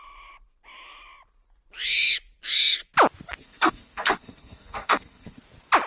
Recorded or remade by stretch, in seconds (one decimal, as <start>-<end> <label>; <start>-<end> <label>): 0.0-3.4 recorded; 3.4-5.4 remade; 5.4-5.9 recorded